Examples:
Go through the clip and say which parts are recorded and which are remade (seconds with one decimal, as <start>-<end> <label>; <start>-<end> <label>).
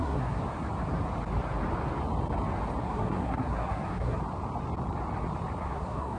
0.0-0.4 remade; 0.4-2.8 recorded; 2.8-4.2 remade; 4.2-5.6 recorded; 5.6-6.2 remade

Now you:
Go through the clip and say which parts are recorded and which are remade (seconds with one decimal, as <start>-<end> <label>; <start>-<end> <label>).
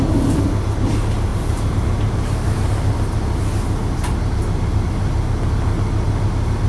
0.0-1.3 recorded; 1.3-2.7 remade; 2.7-3.8 recorded; 3.8-4.9 remade; 4.9-6.7 recorded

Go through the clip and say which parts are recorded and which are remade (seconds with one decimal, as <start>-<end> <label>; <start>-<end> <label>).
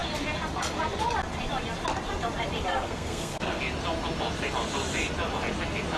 0.0-2.7 recorded; 2.7-3.6 remade; 3.6-6.0 recorded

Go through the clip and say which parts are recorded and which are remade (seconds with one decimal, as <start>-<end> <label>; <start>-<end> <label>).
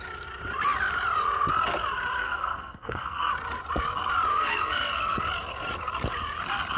0.0-2.2 recorded; 2.2-3.3 remade; 3.3-4.3 recorded; 4.3-5.2 remade; 5.2-6.8 recorded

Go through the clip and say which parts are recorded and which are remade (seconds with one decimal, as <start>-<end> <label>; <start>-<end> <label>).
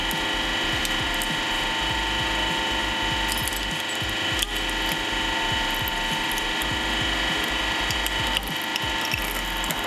0.0-9.9 recorded